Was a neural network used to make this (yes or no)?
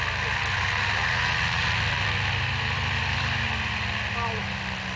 no